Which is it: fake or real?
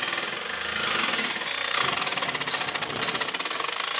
real